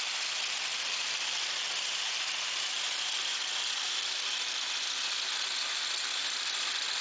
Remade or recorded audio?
recorded